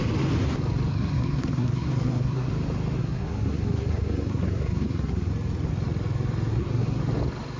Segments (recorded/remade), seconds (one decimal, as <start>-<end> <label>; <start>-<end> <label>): 0.0-0.9 recorded; 0.9-2.5 remade; 2.5-3.0 recorded; 3.0-5.3 remade; 5.3-6.5 recorded; 6.5-7.0 remade; 7.0-7.6 recorded